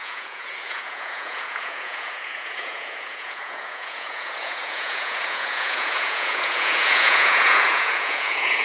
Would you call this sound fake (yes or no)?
yes